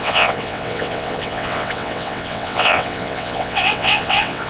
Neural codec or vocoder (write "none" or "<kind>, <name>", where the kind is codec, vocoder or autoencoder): vocoder, WaveNeXt